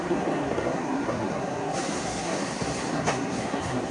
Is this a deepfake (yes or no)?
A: yes